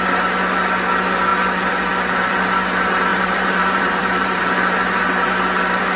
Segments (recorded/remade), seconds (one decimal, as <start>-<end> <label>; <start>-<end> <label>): 0.0-3.1 recorded; 3.1-4.4 remade; 4.4-6.0 recorded